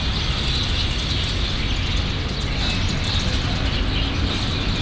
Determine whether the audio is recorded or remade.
recorded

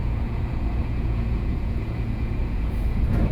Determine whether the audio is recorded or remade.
remade